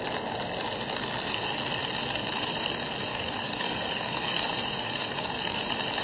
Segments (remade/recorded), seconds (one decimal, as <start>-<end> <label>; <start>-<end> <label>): 0.0-3.1 recorded; 3.1-5.6 remade; 5.6-6.0 recorded